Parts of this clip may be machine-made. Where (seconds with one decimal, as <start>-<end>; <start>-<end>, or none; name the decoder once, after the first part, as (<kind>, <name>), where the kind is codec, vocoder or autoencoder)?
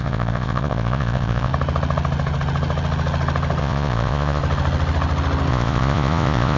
0.0-1.5 (vocoder, Vocos); 3.6-4.4; 5.5-6.6